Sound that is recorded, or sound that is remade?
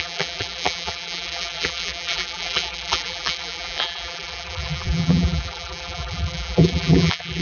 remade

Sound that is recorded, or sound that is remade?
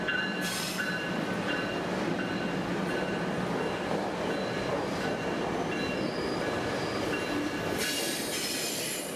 remade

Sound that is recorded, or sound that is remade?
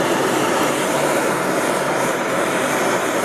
remade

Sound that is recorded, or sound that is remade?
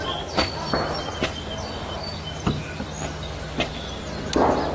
recorded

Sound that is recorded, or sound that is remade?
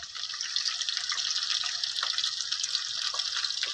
recorded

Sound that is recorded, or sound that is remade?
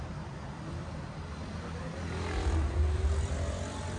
recorded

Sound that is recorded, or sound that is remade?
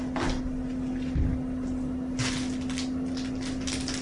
recorded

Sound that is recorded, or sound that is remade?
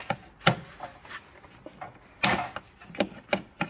recorded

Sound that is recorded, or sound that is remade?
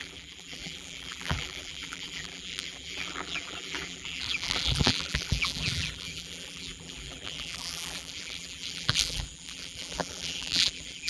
remade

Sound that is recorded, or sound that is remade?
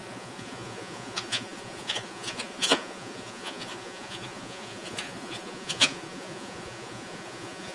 remade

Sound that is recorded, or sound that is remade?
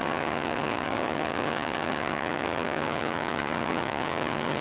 remade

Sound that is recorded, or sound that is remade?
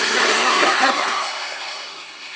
remade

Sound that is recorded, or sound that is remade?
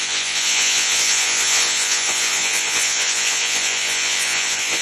remade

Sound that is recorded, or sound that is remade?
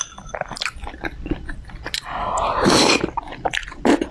recorded